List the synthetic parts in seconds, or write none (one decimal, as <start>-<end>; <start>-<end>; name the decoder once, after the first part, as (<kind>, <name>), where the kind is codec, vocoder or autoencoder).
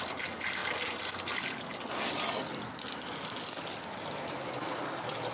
none